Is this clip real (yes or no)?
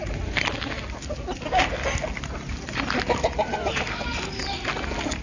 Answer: yes